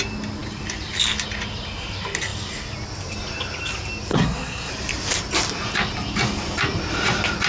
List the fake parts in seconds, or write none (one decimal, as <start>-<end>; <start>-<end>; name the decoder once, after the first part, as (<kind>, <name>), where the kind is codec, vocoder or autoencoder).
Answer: 4.1-4.7 (codec, SNAC)